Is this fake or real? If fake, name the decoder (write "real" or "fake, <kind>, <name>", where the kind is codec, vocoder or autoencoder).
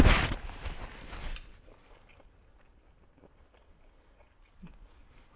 real